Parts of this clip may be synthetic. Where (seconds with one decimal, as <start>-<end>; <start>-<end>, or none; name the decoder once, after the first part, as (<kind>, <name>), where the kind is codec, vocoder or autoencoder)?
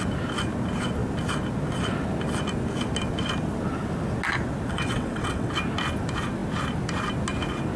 4.7-5.5 (vocoder, WaveNeXt)